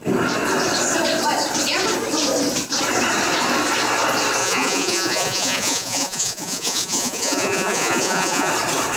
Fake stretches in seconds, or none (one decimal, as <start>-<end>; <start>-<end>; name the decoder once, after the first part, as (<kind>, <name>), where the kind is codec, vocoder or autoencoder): 4.4-8.5 (vocoder, Vocos)